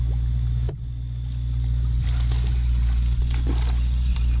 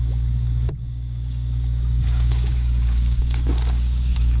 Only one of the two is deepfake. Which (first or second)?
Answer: second